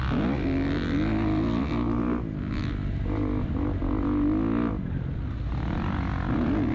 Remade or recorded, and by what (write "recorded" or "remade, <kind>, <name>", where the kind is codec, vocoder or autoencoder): recorded